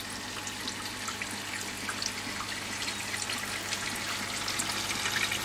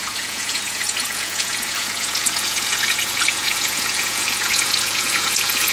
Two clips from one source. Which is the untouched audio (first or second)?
first